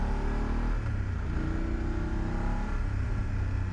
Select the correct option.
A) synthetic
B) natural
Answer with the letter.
B